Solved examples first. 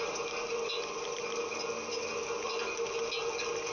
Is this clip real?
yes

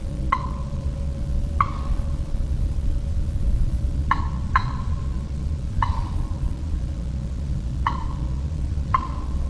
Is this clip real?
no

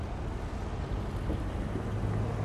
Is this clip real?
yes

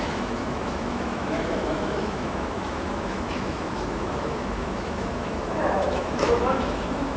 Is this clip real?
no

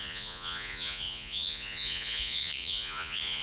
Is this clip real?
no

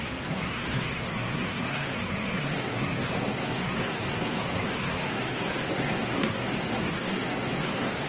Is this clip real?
no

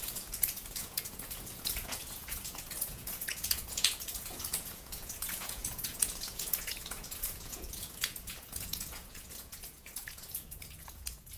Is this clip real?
no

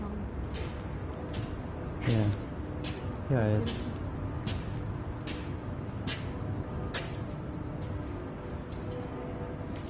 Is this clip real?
yes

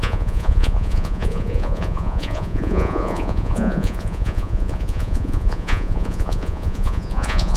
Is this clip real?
no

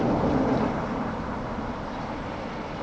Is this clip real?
no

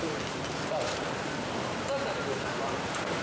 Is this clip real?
yes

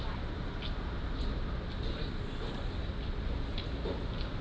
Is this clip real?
yes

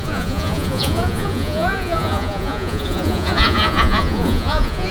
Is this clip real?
no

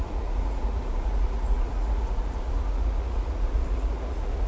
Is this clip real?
no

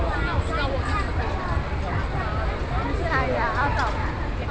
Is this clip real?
yes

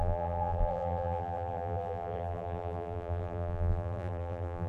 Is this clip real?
no